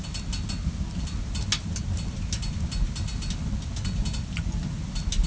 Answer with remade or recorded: recorded